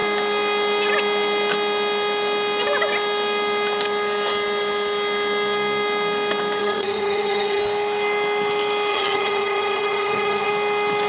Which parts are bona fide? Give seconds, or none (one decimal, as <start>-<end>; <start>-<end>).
0.0-6.6; 7.6-8.9; 10.5-11.1

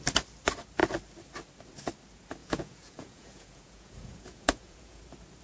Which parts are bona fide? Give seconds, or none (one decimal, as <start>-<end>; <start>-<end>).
0.0-2.4; 5.0-5.4

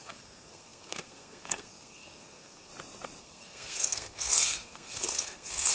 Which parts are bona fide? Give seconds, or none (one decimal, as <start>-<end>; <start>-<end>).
2.7-3.2